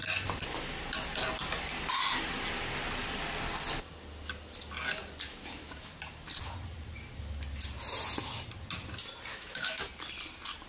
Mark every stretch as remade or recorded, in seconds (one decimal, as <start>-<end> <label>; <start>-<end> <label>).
0.0-5.3 recorded; 5.3-5.9 remade; 5.9-9.3 recorded; 9.3-9.8 remade; 9.8-10.7 recorded